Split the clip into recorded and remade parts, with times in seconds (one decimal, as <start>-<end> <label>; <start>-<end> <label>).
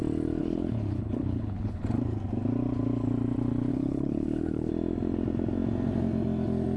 0.0-0.4 recorded; 0.4-1.8 remade; 1.8-3.7 recorded; 3.7-4.7 remade; 4.7-6.8 recorded